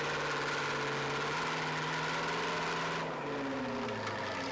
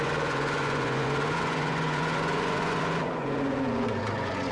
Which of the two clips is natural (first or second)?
first